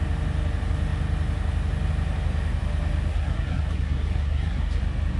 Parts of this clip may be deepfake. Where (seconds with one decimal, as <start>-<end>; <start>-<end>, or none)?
3.1-4.8